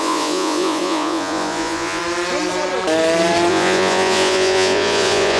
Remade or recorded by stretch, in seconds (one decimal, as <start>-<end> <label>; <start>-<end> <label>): 0.0-2.0 remade; 2.0-3.5 recorded; 3.5-5.4 remade